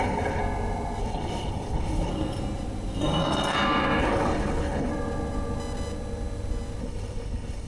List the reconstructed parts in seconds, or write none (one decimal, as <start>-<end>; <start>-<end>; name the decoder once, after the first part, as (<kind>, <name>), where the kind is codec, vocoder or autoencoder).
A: 0.0-0.4 (codec, HILCodec); 1.0-2.1; 4.0-4.9; 6.8-7.7